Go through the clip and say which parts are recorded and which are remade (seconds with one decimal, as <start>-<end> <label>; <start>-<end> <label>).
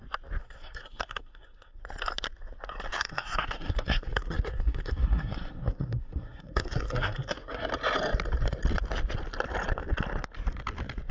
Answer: 0.0-0.4 recorded; 0.4-1.8 remade; 1.8-2.9 recorded; 2.9-7.7 remade; 7.7-11.1 recorded